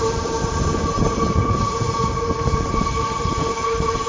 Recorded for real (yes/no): no